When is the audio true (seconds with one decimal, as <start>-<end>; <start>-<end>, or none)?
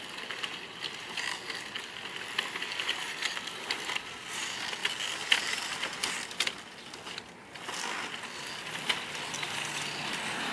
0.0-10.5